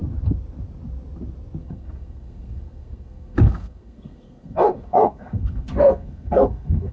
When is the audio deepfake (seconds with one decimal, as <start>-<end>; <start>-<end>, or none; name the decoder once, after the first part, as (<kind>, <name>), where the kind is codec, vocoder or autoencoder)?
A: 1.6-6.9 (codec, SNAC)